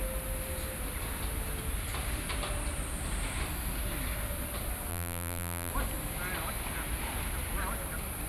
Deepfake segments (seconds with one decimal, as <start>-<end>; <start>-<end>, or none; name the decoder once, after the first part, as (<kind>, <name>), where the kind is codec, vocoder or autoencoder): 4.9-5.7 (vocoder, BigVGAN v2)

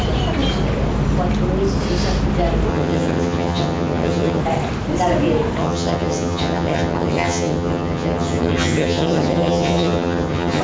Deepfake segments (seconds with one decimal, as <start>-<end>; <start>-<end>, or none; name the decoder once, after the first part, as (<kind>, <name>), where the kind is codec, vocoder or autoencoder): 2.7-4.4 (vocoder, HiFi-GAN); 5.6-10.6

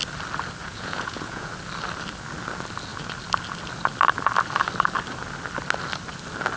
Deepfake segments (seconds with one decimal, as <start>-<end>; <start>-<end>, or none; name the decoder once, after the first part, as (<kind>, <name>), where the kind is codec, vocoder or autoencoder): 0.6-1.5 (vocoder, Vocos)

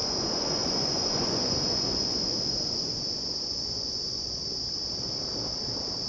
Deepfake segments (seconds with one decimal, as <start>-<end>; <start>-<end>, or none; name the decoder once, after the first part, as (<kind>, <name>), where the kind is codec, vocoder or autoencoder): 0.0-4.4 (vocoder, Vocos)

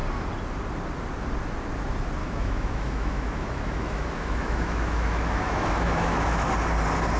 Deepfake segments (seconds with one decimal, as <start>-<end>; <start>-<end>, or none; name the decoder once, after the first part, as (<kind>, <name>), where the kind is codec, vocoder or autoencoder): 2.2-6.5 (autoencoder, DAC-VAE)